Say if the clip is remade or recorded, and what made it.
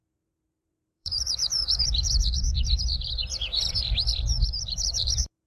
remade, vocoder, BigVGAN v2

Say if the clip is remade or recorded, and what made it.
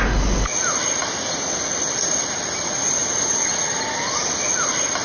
recorded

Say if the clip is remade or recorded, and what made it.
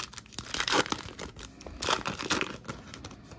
recorded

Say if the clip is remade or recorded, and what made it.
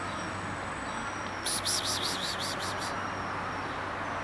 recorded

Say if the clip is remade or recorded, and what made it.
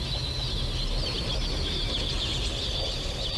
recorded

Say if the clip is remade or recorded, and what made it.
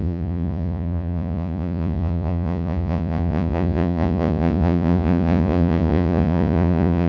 remade, vocoder, Vocos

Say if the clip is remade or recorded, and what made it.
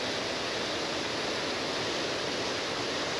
recorded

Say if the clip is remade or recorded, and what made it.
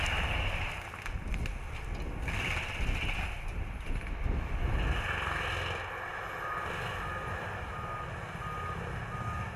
recorded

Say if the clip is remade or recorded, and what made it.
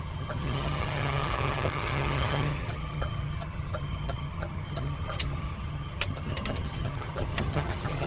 remade, vocoder, HiFi-GAN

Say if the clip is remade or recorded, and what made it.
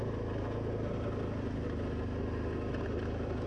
recorded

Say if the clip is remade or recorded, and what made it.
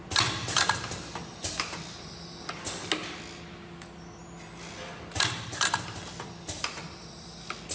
recorded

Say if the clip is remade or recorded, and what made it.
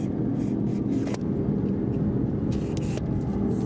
recorded